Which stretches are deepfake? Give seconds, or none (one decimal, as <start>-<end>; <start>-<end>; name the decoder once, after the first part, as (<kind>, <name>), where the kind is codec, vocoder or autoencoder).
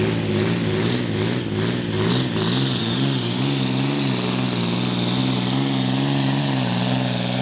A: 2.8-3.4 (autoencoder, DAC-VAE)